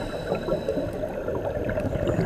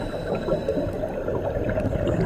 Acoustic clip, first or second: second